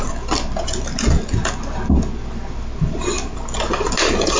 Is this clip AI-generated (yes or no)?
no